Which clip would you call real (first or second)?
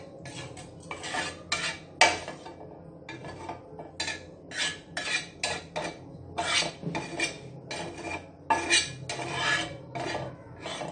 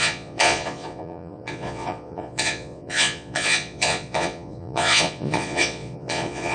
first